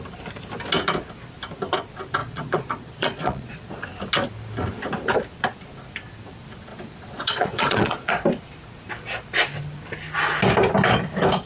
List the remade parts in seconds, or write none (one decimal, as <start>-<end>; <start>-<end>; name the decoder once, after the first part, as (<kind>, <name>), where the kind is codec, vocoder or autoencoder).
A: 2.2-3.8 (vocoder, Vocos); 6.7-8.1